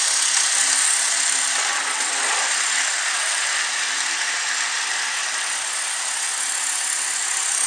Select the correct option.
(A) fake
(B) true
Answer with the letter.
B